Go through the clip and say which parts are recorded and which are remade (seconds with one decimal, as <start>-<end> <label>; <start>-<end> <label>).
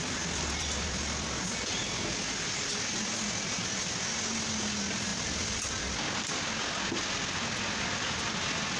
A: 0.0-8.8 recorded